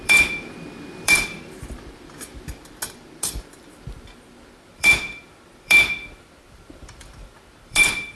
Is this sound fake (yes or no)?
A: yes